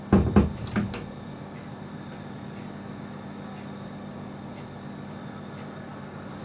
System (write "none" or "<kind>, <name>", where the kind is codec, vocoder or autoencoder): none